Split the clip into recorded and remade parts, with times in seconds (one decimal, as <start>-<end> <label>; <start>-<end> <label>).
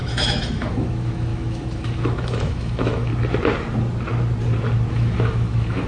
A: 0.0-3.1 remade; 3.1-4.9 recorded; 4.9-5.9 remade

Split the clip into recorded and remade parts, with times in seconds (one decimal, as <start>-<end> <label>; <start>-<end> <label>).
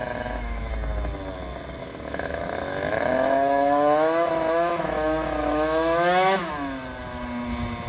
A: 0.0-0.7 remade; 0.7-1.8 recorded; 1.8-6.5 remade; 6.5-7.9 recorded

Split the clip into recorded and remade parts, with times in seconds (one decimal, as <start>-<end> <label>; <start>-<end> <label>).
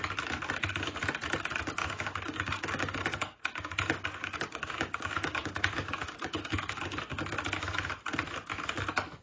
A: 0.0-1.8 recorded; 1.8-7.0 remade; 7.0-9.2 recorded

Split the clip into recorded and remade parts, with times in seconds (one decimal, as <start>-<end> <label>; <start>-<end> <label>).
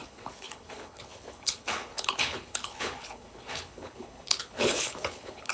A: 0.0-5.5 remade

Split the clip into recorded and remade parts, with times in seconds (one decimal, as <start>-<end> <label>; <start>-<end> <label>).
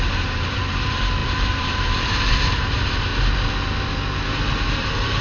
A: 0.0-3.1 remade; 3.1-4.8 recorded; 4.8-5.2 remade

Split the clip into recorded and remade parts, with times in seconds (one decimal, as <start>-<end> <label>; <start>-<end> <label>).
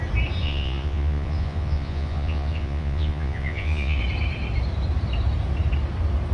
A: 0.0-0.4 recorded; 0.4-4.0 remade; 4.0-6.3 recorded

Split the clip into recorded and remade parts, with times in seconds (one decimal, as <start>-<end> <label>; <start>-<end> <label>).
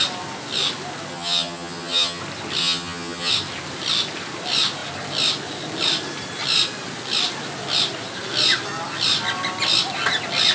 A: 0.0-1.1 recorded; 1.1-2.2 remade; 2.2-2.6 recorded; 2.6-3.3 remade; 3.3-10.5 recorded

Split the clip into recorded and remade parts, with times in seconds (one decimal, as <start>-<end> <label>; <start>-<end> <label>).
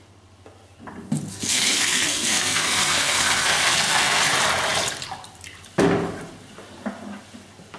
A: 0.0-1.3 recorded; 1.3-4.2 remade; 4.2-7.8 recorded